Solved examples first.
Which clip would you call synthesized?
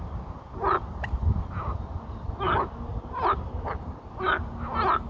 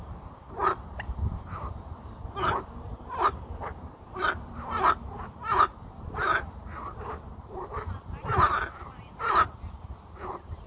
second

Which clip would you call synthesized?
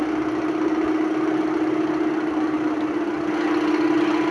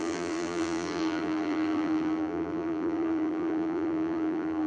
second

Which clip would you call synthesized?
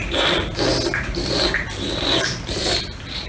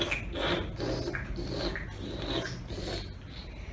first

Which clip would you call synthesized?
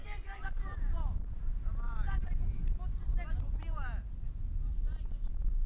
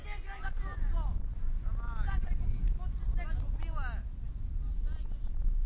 first